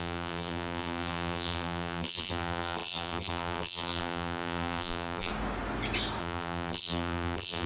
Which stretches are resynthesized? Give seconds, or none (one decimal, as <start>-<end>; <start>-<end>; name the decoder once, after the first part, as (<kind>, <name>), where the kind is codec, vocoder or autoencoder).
0.0-5.3 (vocoder, BigVGAN v2); 6.2-7.7